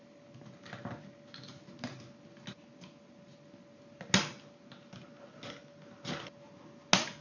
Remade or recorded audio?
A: recorded